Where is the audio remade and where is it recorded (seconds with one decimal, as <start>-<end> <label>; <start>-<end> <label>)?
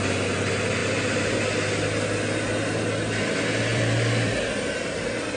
0.0-3.7 recorded; 3.7-4.3 remade; 4.3-5.4 recorded